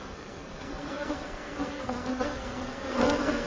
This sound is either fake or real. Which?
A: fake